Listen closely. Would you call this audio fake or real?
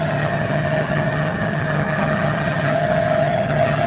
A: fake